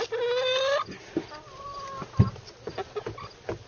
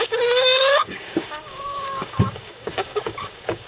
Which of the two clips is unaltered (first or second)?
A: first